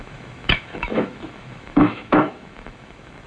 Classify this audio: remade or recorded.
remade